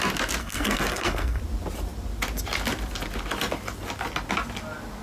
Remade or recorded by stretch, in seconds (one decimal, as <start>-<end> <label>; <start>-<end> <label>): 0.0-0.4 recorded; 0.4-1.4 remade; 1.4-5.0 recorded